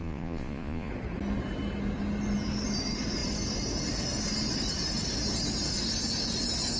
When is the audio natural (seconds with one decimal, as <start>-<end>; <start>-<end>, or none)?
0.9-6.8